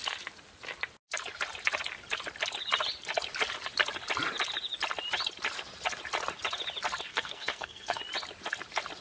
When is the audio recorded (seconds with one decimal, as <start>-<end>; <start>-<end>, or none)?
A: 0.0-7.1; 8.0-9.0